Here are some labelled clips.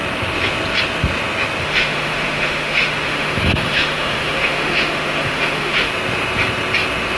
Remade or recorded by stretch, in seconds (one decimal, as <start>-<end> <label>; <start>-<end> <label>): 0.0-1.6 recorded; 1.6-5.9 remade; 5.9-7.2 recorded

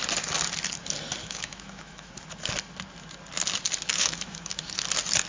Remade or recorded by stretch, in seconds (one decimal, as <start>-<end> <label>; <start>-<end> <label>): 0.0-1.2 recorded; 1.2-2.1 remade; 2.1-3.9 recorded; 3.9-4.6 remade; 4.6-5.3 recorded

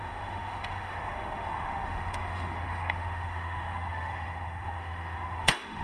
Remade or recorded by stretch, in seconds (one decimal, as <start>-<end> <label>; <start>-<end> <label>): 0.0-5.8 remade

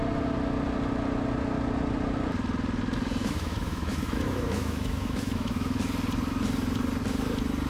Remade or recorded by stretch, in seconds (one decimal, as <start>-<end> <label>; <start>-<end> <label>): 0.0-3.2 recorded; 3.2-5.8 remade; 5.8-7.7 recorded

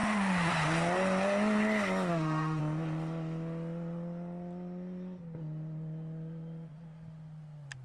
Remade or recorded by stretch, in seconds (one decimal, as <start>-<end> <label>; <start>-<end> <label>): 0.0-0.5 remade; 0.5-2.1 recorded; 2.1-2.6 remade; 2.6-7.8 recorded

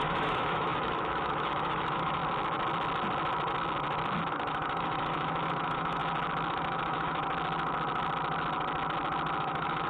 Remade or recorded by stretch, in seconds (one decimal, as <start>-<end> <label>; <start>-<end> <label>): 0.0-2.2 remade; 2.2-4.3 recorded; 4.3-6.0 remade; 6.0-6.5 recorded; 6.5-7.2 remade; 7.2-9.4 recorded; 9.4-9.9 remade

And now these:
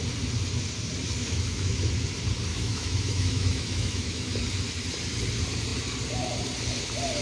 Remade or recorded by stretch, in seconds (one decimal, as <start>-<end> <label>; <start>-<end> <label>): 0.0-1.2 recorded; 1.2-1.9 remade; 1.9-2.5 recorded; 2.5-4.4 remade; 4.4-7.2 recorded

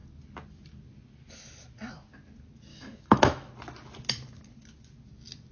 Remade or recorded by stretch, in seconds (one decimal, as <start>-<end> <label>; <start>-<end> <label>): 0.0-2.7 recorded; 2.7-3.5 remade; 3.5-5.5 recorded